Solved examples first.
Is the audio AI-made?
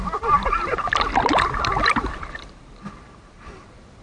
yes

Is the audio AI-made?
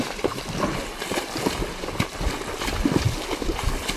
yes